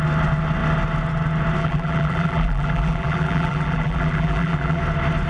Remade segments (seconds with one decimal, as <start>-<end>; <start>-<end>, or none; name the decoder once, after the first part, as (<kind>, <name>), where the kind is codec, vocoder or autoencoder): 1.6-4.8 (vocoder, BigVGAN v2)